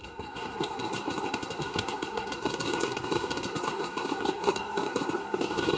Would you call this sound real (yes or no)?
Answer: no